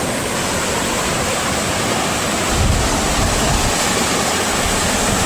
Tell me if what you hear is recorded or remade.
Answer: recorded